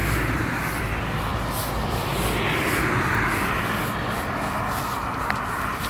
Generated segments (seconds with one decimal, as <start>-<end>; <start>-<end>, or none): none